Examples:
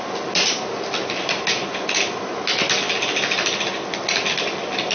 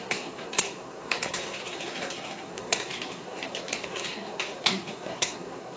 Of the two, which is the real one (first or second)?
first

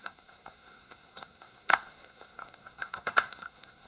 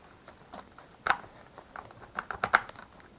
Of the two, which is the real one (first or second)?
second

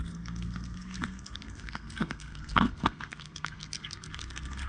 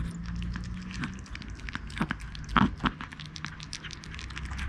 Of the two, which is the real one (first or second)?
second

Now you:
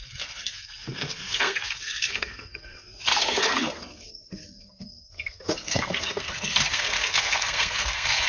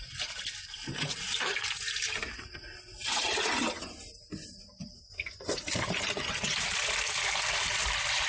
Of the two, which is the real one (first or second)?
second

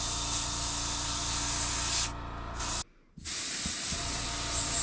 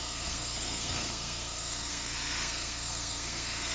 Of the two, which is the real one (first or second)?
first